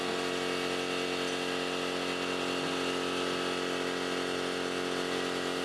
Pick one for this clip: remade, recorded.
recorded